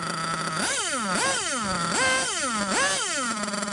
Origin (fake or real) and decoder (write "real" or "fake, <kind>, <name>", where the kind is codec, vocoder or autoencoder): real